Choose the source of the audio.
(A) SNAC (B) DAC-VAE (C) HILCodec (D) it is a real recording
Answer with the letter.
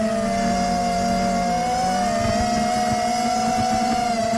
D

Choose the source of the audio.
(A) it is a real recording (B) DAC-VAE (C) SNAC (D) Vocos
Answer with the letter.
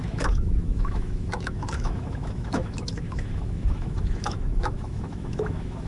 B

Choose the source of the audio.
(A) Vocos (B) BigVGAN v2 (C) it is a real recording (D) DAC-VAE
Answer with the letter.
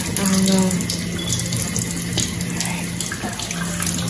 C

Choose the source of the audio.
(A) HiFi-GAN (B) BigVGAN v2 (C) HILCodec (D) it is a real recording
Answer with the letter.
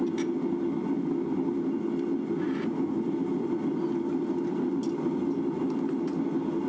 D